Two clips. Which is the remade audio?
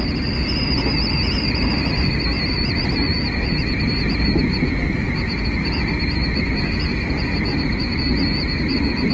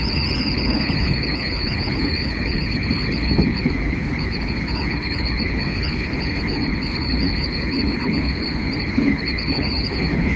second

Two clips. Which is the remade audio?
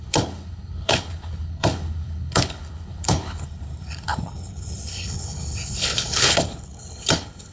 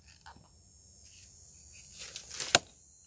first